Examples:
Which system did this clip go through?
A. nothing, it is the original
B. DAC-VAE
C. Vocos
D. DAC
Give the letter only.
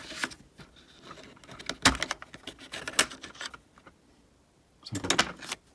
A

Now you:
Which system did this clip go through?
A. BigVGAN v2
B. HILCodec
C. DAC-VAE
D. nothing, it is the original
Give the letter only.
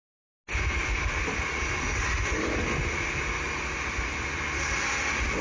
D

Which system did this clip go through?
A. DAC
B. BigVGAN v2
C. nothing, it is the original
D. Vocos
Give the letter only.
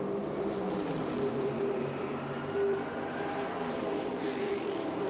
B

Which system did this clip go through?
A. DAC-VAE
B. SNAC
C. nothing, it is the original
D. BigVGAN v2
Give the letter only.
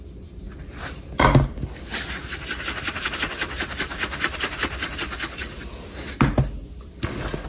C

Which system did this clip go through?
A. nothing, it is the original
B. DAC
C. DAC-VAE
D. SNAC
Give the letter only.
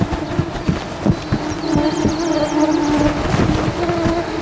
A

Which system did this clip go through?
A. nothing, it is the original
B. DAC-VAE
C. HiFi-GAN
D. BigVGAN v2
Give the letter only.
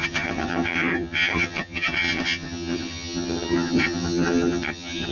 C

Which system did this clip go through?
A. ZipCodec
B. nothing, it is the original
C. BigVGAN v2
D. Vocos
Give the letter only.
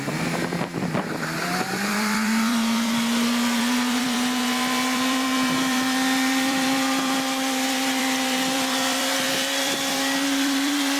C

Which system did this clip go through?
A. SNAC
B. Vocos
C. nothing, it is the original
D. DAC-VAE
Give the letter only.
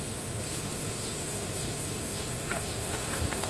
D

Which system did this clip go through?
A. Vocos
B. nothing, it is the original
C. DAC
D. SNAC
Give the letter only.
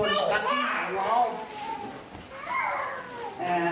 B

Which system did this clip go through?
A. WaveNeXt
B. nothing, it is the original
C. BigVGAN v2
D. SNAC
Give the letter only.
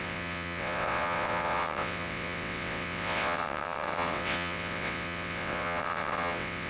A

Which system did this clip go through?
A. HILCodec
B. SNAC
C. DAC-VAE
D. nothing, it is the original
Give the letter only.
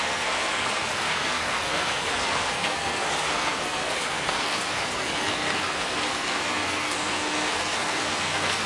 B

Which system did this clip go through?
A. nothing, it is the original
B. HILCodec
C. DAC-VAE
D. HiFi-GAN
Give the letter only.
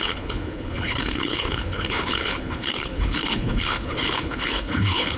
B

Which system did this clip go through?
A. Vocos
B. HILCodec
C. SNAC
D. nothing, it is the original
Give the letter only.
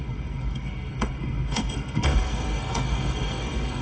C